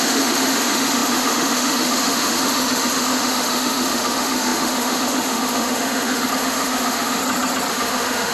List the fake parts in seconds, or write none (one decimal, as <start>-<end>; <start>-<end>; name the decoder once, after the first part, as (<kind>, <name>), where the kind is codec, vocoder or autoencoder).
0.0-7.2 (autoencoder, DAC-VAE); 7.7-8.3

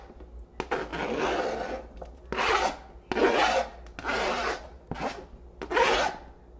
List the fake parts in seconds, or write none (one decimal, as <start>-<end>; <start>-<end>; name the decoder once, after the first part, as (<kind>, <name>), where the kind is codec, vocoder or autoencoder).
none

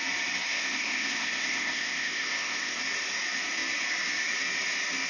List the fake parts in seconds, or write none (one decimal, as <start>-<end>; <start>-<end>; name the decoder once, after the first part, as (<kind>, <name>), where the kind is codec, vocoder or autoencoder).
0.5-2.8 (codec, ZipCodec)

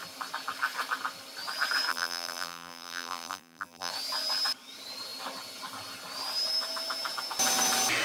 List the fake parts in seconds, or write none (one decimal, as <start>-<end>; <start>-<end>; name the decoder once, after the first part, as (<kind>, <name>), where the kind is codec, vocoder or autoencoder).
1.9-3.9 (vocoder, BigVGAN v2)

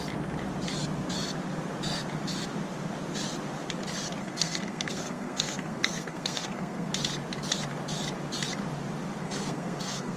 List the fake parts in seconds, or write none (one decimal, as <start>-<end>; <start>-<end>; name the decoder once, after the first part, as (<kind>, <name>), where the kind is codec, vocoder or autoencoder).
4.2-6.9 (codec, SNAC); 9.2-10.2

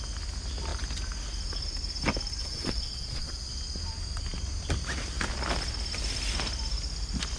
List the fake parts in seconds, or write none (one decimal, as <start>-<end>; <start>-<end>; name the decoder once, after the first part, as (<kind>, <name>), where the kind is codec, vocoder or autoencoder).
2.4-3.5 (vocoder, Vocos)

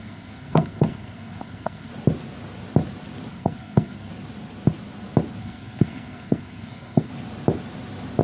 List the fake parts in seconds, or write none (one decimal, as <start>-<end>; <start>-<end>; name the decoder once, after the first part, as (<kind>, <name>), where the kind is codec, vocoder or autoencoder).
0.0-1.9 (codec, SNAC); 3.3-4.1; 5.4-7.1

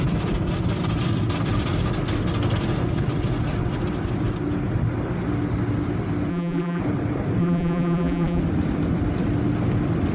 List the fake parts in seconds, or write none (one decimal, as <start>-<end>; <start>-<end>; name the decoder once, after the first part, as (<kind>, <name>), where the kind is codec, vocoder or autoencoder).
6.3-6.8 (vocoder, BigVGAN v2); 7.4-8.4